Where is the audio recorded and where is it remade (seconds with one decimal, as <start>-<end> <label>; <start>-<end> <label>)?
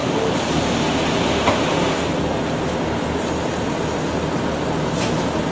0.0-2.1 remade; 2.1-5.5 recorded